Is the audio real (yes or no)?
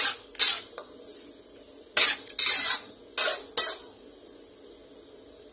yes